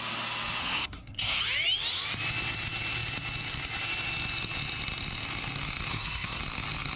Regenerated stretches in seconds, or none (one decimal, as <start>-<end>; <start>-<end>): 0.6-1.4; 5.9-6.4